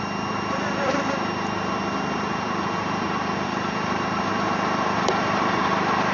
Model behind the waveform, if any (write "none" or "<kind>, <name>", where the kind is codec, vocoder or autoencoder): vocoder, BigVGAN v2